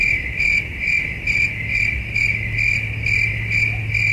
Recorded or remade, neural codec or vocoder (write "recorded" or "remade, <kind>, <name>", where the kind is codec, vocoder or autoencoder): recorded